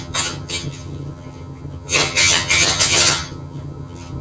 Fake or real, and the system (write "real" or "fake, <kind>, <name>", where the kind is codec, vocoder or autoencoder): fake, vocoder, HiFi-GAN